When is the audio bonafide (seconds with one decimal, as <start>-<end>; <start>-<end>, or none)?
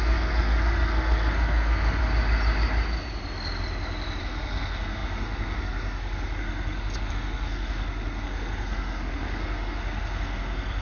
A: 2.0-4.2